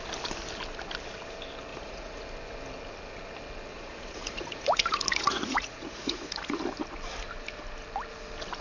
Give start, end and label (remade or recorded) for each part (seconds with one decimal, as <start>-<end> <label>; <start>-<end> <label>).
0.0-1.7 recorded; 1.7-2.2 remade; 2.2-3.7 recorded; 3.7-6.6 remade; 6.6-8.6 recorded